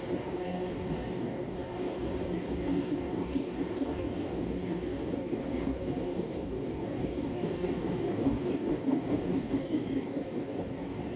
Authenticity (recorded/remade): remade